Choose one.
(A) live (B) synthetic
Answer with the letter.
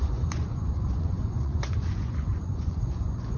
B